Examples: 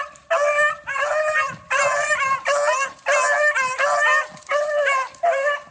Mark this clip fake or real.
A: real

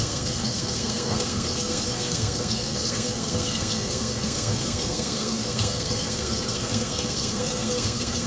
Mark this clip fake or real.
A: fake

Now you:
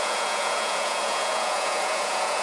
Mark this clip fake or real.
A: fake